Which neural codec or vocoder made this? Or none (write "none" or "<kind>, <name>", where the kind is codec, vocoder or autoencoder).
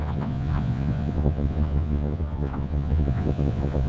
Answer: vocoder, Vocos